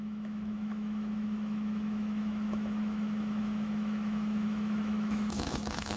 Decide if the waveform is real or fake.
fake